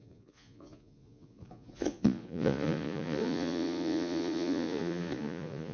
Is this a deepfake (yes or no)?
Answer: yes